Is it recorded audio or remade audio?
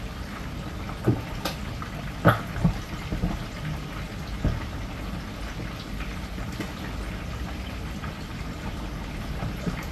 recorded